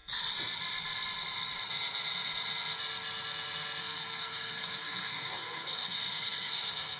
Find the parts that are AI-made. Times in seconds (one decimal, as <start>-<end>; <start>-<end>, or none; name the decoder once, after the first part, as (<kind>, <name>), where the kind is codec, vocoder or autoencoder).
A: 3.8-7.0 (codec, SNAC)